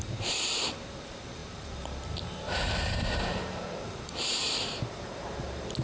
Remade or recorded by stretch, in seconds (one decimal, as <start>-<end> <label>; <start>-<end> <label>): 0.0-5.8 remade

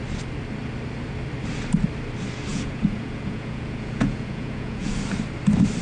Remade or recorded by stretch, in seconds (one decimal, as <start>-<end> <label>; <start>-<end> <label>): 0.0-2.5 recorded; 2.5-4.9 remade; 4.9-5.8 recorded